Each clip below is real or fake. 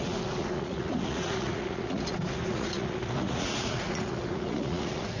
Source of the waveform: fake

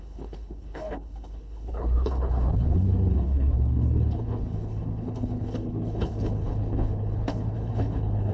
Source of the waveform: fake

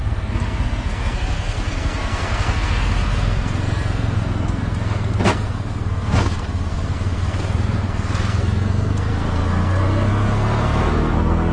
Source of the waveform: fake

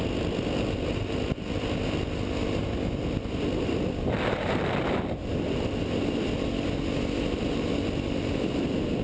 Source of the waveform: real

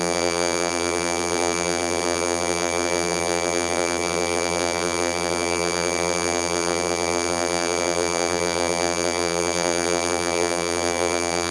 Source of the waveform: fake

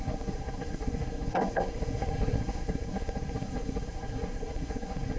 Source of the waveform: fake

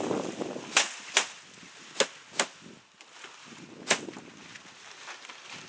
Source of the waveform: real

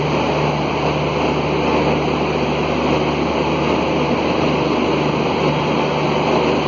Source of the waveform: real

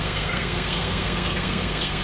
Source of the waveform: fake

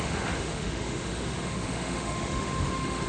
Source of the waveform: fake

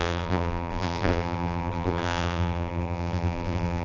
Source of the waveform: fake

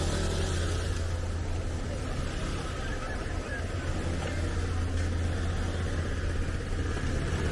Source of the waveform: real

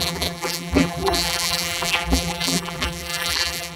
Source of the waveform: fake